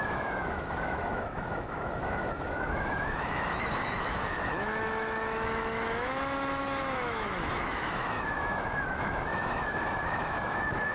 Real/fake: fake